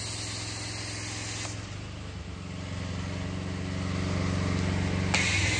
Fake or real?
real